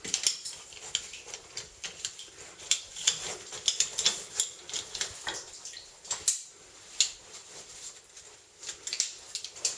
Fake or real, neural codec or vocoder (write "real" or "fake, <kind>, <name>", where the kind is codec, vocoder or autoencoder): real